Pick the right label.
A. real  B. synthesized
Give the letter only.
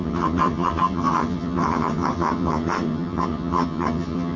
B